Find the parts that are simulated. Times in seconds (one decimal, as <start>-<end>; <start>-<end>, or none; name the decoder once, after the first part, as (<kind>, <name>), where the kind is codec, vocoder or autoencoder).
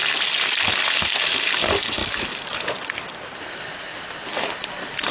none